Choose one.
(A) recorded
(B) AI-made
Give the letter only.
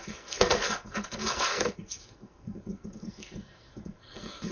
B